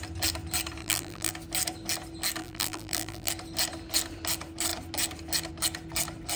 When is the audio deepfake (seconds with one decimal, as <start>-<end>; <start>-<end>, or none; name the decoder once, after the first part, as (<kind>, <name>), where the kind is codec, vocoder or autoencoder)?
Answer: 0.8-1.3 (vocoder, BigVGAN v2); 2.4-3.3